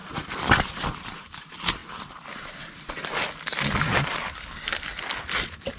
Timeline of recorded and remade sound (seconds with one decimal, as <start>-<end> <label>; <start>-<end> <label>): 0.0-1.2 recorded; 1.2-1.8 remade; 1.8-5.3 recorded; 5.3-5.8 remade